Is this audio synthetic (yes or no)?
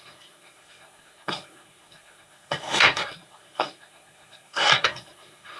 yes